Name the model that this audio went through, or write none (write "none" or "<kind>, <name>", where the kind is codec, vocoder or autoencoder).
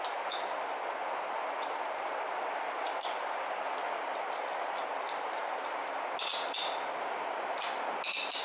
none